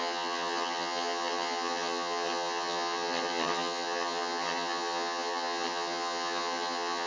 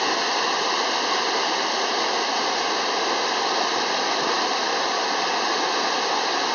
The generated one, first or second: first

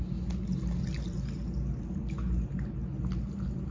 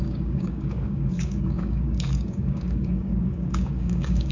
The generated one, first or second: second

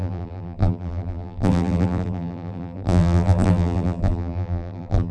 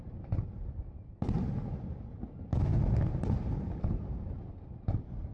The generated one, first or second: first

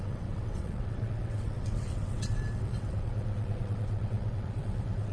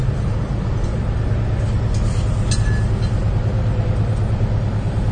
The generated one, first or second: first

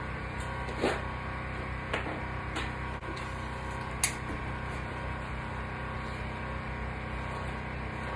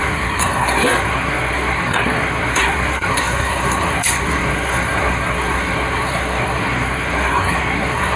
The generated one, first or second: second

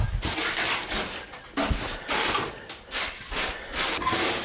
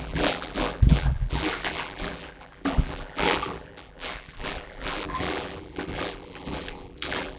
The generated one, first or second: second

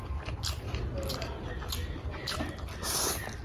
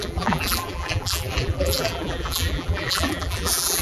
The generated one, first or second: second